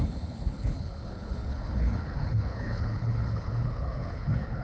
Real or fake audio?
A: fake